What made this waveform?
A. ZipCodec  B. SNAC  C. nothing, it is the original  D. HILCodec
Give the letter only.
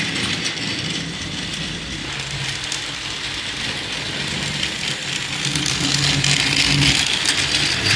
C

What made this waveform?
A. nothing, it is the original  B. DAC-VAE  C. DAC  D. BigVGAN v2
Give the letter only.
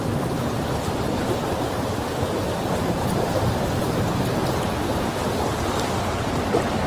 A